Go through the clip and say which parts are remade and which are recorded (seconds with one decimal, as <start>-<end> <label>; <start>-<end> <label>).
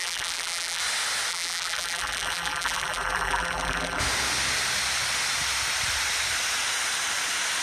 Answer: 0.0-0.8 remade; 0.8-1.3 recorded; 1.3-4.0 remade; 4.0-7.6 recorded